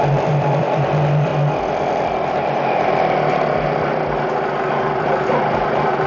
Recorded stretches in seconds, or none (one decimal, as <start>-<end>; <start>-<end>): 1.3-5.0